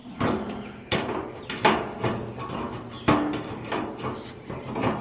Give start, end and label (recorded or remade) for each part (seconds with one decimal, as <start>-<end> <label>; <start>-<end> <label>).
0.0-5.0 recorded